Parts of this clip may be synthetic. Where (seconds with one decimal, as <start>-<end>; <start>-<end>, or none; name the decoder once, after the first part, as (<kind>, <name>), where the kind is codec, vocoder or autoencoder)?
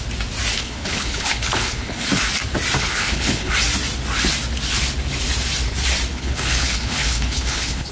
0.5-2.1 (codec, HILCodec); 2.8-3.5; 6.1-7.9